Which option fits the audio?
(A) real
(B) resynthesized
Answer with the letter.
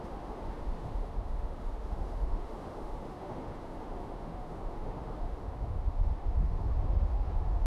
B